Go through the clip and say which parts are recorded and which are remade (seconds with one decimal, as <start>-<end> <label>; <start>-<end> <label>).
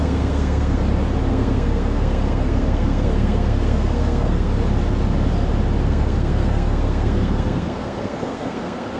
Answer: 0.0-0.8 remade; 0.8-1.3 recorded; 1.3-4.5 remade; 4.5-5.8 recorded; 5.8-9.0 remade